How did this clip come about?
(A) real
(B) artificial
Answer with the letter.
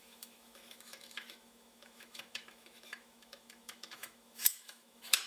B